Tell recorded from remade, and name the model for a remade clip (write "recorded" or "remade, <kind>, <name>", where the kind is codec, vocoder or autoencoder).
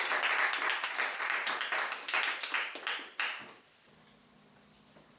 recorded